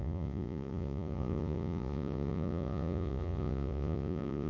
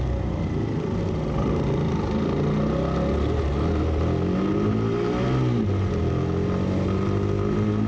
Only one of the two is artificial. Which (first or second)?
first